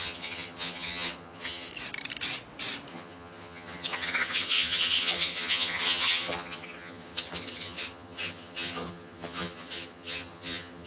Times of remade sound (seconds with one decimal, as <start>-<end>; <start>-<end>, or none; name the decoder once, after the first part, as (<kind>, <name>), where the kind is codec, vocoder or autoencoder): 0.0-1.7 (vocoder, HiFi-GAN); 2.9-10.9